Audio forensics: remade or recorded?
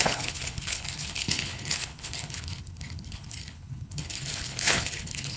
remade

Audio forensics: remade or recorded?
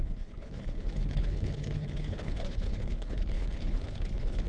remade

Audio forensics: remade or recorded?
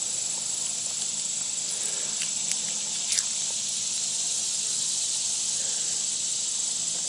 recorded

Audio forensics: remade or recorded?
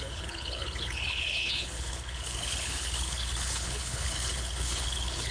remade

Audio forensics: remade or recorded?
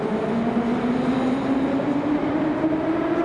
recorded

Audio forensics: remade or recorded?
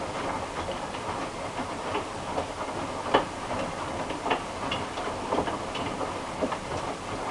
recorded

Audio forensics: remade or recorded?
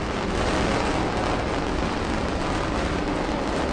recorded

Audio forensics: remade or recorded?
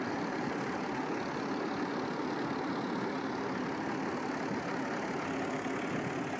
recorded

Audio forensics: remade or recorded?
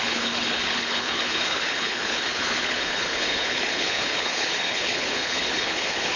remade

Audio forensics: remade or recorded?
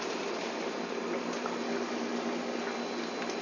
recorded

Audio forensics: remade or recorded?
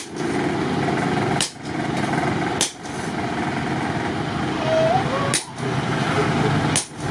recorded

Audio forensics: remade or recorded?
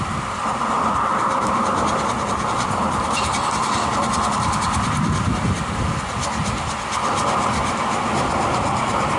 recorded